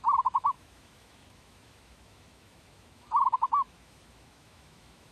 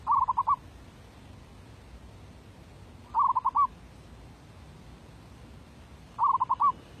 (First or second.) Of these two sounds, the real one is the second